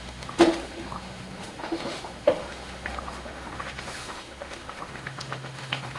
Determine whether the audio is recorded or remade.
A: remade